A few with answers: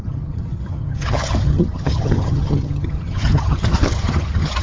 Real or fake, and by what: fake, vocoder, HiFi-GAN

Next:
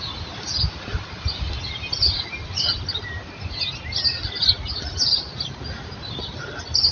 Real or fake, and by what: real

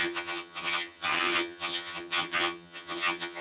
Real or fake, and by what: fake, vocoder, HiFi-GAN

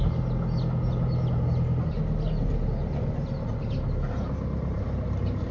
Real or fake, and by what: real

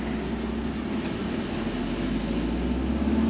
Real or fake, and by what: real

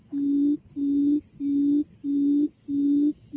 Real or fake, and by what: real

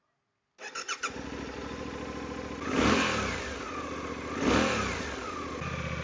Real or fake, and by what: real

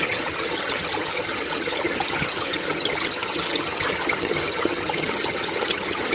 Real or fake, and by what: fake, vocoder, HiFi-GAN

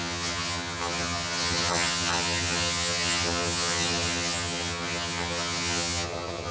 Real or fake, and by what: fake, vocoder, HiFi-GAN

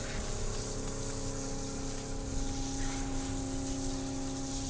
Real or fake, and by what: real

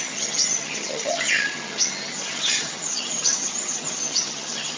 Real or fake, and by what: fake, vocoder, HiFi-GAN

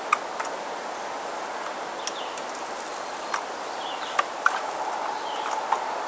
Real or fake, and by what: real